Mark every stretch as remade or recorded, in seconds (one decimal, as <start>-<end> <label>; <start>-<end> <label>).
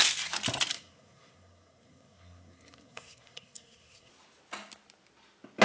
0.0-0.7 recorded; 0.7-4.1 remade; 4.1-5.6 recorded